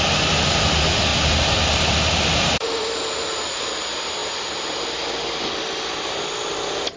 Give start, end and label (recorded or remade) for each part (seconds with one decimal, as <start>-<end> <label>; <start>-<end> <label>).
0.0-1.1 recorded; 1.1-3.7 remade; 3.7-7.0 recorded